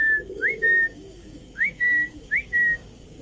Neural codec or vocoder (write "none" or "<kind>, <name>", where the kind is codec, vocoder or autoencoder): codec, DAC